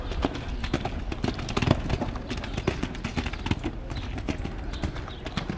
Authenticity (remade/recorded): recorded